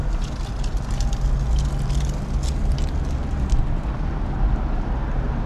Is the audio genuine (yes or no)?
yes